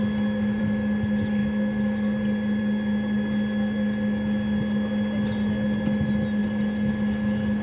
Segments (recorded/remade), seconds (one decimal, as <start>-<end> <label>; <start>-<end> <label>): 0.0-7.6 recorded